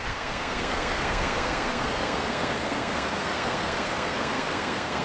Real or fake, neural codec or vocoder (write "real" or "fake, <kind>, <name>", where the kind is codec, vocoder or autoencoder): fake, codec, SNAC